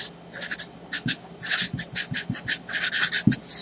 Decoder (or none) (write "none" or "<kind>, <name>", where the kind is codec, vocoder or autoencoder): none